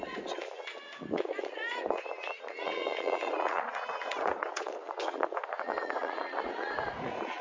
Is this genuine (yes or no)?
no